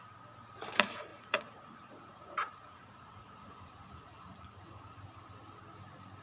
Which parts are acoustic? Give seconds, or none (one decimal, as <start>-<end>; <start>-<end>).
0.0-1.1; 4.8-6.2